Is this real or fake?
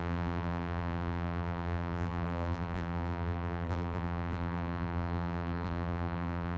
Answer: fake